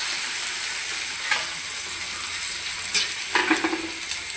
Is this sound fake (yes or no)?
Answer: no